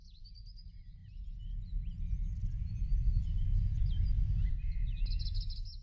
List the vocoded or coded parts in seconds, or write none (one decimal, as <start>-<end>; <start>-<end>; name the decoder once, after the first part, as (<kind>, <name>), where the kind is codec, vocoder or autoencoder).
none